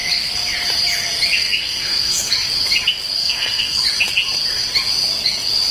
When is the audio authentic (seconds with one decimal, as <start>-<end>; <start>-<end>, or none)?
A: 0.0-1.4; 2.3-3.2; 3.8-5.7